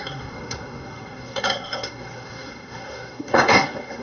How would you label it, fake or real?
fake